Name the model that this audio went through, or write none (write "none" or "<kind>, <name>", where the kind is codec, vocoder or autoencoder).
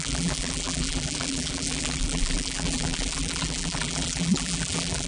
vocoder, BigVGAN v2